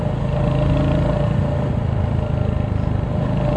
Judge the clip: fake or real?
real